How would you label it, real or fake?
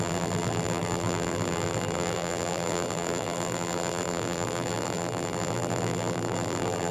fake